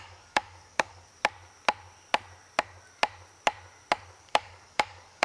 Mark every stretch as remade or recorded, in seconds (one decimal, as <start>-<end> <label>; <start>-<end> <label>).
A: 0.0-1.1 remade; 1.1-4.2 recorded; 4.2-5.2 remade